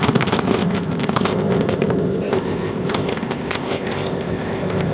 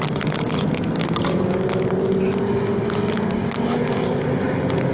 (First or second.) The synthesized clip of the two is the first